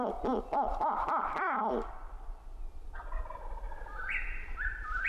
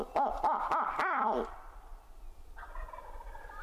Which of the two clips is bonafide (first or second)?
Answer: second